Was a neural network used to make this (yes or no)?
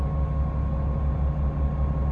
no